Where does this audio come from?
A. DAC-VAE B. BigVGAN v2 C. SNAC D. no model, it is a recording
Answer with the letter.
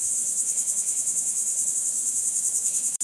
A